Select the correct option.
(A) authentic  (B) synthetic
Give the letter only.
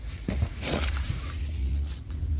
B